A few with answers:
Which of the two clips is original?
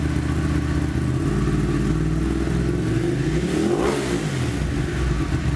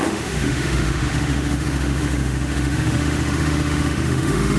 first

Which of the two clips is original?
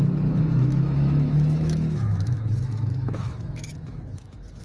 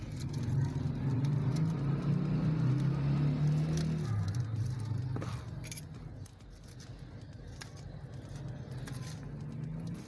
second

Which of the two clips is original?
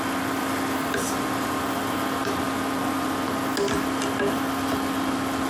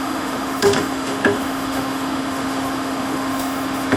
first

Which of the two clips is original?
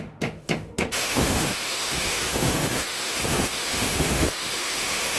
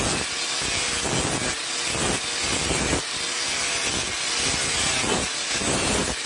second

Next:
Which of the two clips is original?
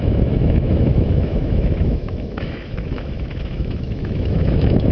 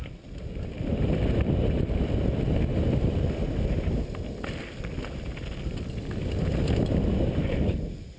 second